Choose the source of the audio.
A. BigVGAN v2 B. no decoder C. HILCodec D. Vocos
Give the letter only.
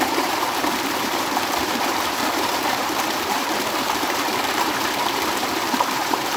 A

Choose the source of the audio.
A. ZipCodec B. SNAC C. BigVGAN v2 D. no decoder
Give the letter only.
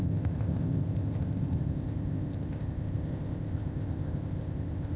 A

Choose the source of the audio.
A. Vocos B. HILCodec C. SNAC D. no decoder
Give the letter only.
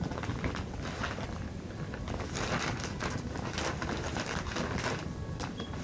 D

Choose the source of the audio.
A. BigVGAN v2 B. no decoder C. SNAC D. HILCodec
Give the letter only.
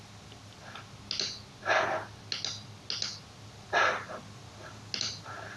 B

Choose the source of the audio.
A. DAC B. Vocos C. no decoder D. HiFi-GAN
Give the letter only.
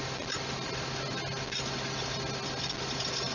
C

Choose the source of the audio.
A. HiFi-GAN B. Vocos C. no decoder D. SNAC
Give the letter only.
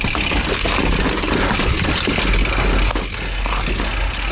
C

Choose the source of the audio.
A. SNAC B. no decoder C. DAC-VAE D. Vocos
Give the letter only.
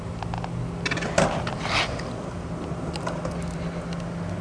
B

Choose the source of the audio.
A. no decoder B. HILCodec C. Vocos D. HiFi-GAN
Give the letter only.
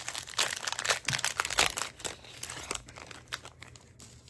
A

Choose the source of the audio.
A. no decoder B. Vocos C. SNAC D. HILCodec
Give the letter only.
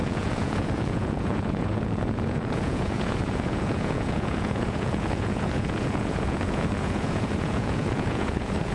B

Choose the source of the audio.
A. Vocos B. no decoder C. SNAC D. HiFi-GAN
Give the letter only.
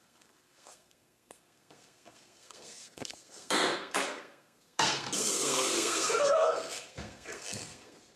C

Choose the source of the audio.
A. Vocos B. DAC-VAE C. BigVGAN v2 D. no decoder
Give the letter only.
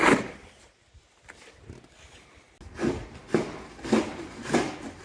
D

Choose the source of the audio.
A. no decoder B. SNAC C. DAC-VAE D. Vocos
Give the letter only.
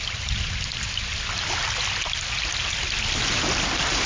A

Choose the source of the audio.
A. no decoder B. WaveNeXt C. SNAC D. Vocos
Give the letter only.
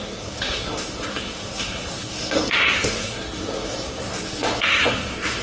C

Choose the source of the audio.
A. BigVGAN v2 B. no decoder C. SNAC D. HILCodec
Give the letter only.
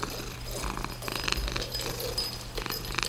B